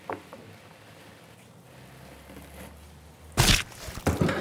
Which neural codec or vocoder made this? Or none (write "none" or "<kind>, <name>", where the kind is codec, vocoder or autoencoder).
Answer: none